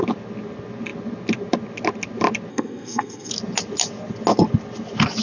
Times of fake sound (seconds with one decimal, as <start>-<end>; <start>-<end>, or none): 2.5-3.3